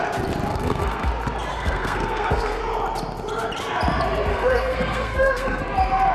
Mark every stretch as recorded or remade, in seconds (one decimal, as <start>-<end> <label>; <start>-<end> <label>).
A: 0.0-0.5 recorded; 0.5-1.1 remade; 1.1-1.5 recorded; 1.5-2.6 remade; 2.6-4.3 recorded; 4.3-5.6 remade; 5.6-6.1 recorded